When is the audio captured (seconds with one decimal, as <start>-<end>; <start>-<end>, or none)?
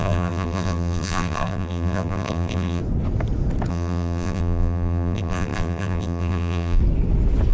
2.8-3.7; 6.8-7.5